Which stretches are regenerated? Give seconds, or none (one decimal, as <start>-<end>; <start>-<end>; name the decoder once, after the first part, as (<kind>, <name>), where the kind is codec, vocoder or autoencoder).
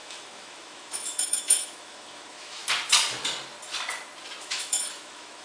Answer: 0.0-2.6 (autoencoder, DAC-VAE); 4.4-5.4